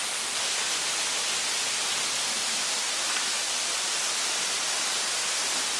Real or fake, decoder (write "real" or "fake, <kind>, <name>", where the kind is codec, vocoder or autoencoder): real